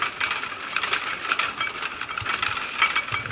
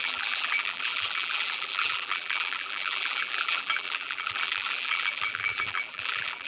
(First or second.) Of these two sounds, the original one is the first